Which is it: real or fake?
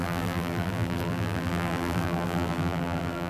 fake